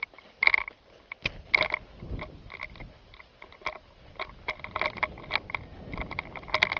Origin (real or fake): real